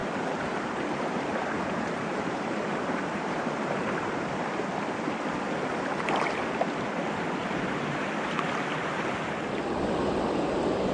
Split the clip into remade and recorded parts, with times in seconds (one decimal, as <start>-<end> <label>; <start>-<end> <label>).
0.0-4.2 remade; 4.2-7.4 recorded; 7.4-8.1 remade; 8.1-10.9 recorded